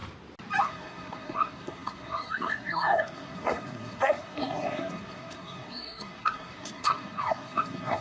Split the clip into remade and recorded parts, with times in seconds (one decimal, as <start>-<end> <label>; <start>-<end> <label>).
0.0-0.6 recorded; 0.6-8.0 remade